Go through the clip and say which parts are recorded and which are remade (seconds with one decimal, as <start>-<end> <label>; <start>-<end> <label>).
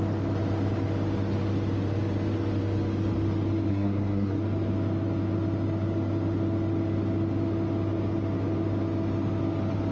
0.0-3.7 recorded; 3.7-4.4 remade; 4.4-9.9 recorded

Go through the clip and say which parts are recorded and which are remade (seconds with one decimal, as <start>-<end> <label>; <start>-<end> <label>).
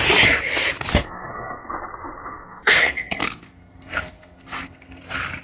0.0-0.9 recorded; 0.9-1.7 remade; 1.7-2.3 recorded; 2.3-5.0 remade; 5.0-5.4 recorded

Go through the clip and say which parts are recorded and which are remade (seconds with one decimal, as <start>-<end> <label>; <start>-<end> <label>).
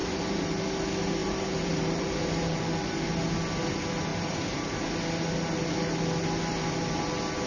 0.0-0.5 remade; 0.5-1.2 recorded; 1.2-2.6 remade; 2.6-4.1 recorded; 4.1-4.8 remade; 4.8-7.5 recorded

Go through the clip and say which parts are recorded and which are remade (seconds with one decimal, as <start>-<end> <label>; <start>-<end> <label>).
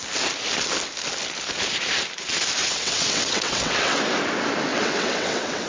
0.0-2.6 recorded; 2.6-4.0 remade; 4.0-4.7 recorded; 4.7-5.7 remade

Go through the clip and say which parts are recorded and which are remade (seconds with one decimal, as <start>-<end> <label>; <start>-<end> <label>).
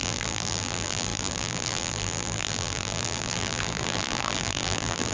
0.0-5.1 remade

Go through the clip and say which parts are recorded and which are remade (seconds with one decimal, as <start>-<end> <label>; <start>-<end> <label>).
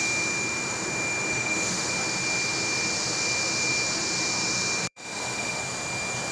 0.0-1.3 recorded; 1.3-1.9 remade; 1.9-4.8 recorded; 4.8-5.6 remade; 5.6-6.3 recorded